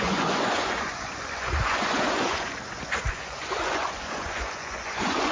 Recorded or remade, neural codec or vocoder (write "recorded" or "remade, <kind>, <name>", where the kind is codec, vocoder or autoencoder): remade, vocoder, Vocos